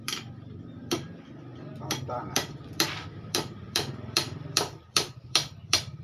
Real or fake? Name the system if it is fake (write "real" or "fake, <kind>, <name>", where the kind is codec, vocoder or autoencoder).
fake, vocoder, BigVGAN v2